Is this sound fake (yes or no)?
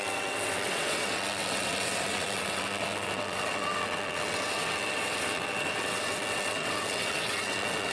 yes